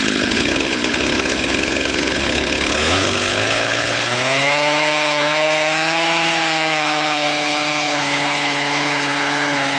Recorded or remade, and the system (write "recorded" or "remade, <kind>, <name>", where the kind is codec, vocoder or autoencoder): remade, codec, HILCodec